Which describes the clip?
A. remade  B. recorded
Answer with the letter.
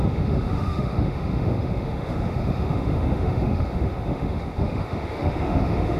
A